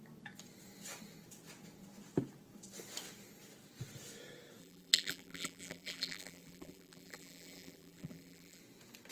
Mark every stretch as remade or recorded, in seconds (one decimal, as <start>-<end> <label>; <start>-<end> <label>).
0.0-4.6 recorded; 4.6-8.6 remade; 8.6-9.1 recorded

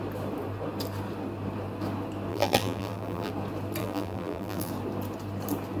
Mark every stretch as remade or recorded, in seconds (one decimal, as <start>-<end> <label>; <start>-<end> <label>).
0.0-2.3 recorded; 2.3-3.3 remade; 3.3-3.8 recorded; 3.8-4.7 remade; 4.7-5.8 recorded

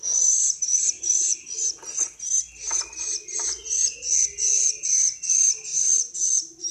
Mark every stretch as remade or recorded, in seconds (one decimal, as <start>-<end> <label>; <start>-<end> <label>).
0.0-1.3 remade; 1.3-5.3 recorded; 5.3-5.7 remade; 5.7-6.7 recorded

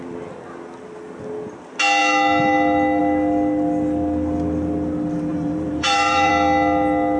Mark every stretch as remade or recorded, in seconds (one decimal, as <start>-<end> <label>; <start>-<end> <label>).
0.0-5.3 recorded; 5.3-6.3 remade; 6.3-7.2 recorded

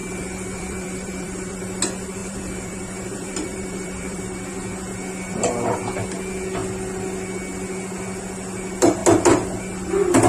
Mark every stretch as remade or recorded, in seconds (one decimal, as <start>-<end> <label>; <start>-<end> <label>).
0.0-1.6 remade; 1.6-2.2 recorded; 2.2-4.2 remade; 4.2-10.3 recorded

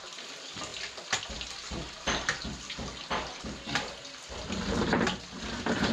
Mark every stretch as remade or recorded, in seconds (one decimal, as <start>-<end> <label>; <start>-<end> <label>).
0.0-5.9 recorded

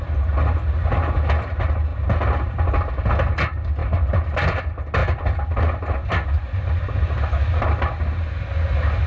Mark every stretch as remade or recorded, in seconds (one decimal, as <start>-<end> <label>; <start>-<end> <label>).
0.0-3.8 recorded; 3.8-4.6 remade; 4.6-5.0 recorded; 5.0-8.0 remade; 8.0-9.1 recorded

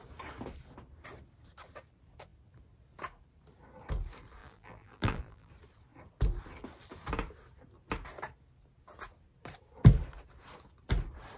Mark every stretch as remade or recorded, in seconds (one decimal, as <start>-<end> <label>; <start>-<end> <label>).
0.0-4.4 recorded; 4.4-5.5 remade; 5.5-11.4 recorded